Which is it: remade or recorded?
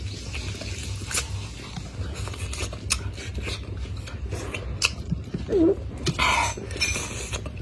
recorded